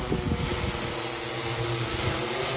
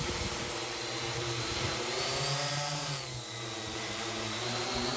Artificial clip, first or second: second